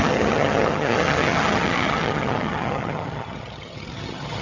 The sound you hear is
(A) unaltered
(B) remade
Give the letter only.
B